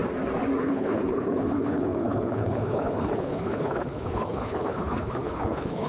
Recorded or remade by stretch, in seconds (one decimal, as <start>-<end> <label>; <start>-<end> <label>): 0.0-0.6 recorded; 0.6-5.9 remade